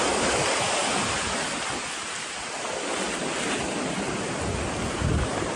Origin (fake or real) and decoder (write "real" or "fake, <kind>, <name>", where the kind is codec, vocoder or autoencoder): real